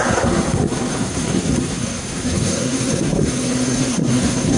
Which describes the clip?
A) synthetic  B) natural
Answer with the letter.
A